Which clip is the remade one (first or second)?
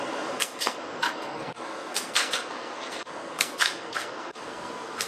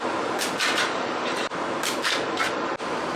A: first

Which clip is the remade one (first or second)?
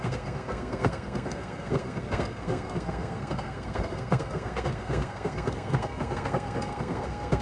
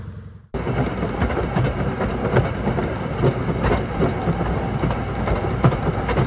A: first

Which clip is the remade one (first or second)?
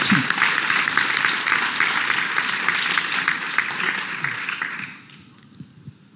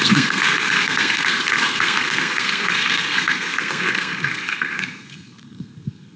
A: second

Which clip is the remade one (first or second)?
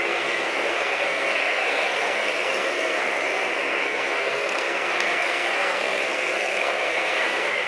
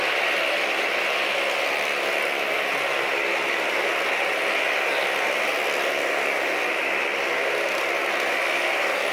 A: first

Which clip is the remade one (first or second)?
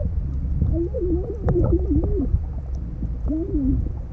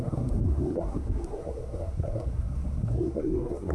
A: second